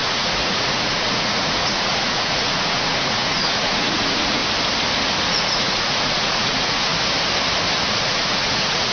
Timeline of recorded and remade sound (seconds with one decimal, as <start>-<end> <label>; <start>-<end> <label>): 0.0-4.4 remade; 4.4-5.3 recorded; 5.3-6.9 remade; 6.9-7.9 recorded; 7.9-8.9 remade